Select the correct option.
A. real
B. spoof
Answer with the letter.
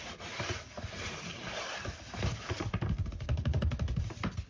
A